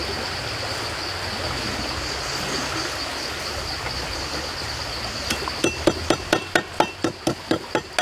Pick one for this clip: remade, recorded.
recorded